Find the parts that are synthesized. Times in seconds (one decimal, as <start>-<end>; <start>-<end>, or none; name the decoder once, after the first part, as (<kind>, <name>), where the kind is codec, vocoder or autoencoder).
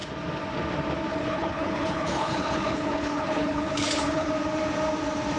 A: 1.1-4.3 (codec, HILCodec)